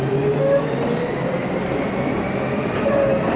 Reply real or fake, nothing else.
real